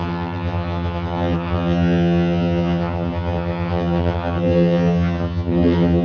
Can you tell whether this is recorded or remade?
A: remade